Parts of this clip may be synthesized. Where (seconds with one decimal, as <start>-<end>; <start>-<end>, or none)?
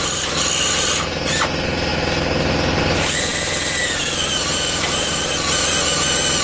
none